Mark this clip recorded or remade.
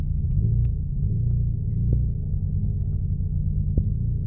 recorded